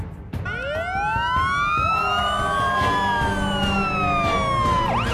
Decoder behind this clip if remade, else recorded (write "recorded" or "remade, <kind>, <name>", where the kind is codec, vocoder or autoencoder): recorded